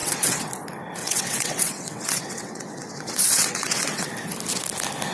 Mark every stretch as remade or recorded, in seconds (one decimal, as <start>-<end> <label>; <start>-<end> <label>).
0.0-0.5 remade; 0.5-1.0 recorded; 1.0-4.1 remade; 4.1-5.1 recorded